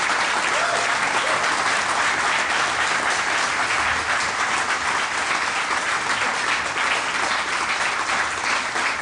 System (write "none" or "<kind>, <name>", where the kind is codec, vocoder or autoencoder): none